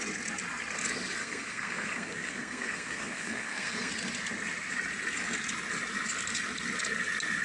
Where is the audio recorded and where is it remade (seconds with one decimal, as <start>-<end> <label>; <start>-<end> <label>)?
0.0-1.2 recorded; 1.2-3.9 remade; 3.9-7.4 recorded